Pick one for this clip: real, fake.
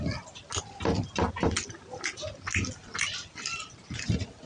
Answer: real